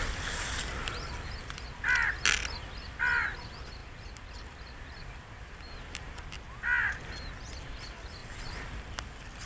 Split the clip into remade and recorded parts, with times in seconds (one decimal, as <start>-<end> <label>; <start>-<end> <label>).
0.0-3.8 recorded; 3.8-6.2 remade; 6.2-8.2 recorded; 8.2-8.9 remade; 8.9-9.4 recorded